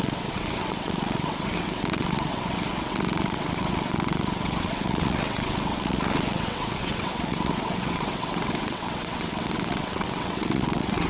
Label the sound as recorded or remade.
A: remade